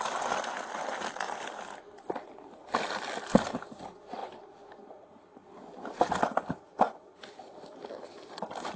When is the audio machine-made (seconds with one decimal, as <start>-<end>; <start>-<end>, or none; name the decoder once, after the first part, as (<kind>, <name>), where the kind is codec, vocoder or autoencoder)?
none